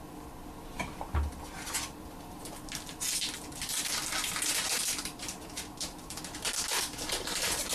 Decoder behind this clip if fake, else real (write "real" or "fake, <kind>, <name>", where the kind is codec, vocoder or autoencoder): real